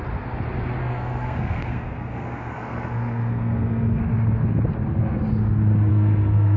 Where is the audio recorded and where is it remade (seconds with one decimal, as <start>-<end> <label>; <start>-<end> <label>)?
0.0-0.8 recorded; 0.8-4.0 remade; 4.0-5.9 recorded; 5.9-6.6 remade

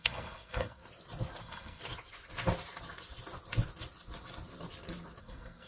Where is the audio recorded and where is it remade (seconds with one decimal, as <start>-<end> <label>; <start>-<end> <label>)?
0.0-0.8 remade; 0.8-1.4 recorded; 1.4-1.8 remade; 1.8-5.2 recorded; 5.2-5.7 remade

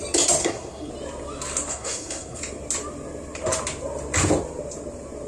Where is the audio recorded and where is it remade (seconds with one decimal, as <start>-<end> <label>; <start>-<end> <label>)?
0.0-0.4 recorded; 0.4-0.9 remade; 0.9-1.7 recorded; 1.7-2.4 remade; 2.4-5.3 recorded

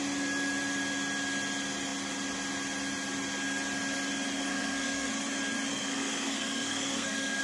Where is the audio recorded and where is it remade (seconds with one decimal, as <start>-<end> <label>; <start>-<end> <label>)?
0.0-4.5 recorded; 4.5-5.1 remade; 5.1-5.7 recorded; 5.7-7.4 remade

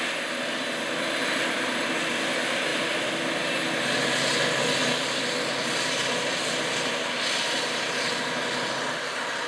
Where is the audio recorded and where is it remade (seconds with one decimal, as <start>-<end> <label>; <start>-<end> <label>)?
0.0-9.5 recorded